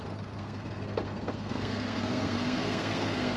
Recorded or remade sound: remade